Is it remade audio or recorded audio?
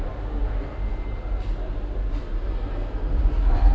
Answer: recorded